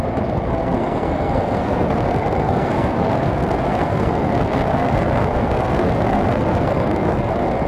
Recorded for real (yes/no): no